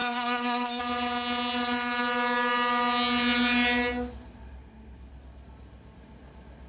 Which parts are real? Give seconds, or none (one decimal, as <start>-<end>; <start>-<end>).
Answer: 0.8-6.7